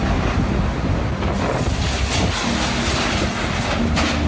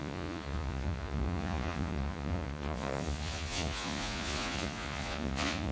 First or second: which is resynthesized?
second